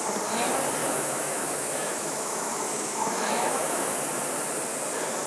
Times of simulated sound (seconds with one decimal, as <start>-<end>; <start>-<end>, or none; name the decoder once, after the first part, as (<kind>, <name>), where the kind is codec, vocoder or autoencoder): 0.8-3.9 (autoencoder, DAC-VAE)